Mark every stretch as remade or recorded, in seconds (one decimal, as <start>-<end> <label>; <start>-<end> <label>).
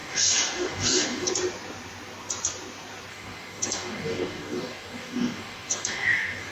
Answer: 0.0-1.3 remade; 1.3-3.1 recorded; 3.1-6.5 remade